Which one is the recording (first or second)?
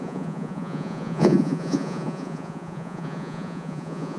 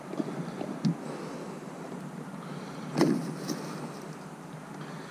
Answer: second